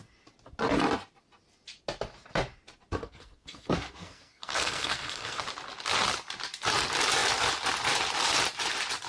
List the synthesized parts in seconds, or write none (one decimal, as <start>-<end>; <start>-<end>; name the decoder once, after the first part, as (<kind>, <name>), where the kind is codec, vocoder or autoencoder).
3.0-5.4 (codec, SNAC)